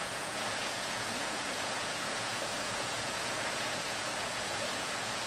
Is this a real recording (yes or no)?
no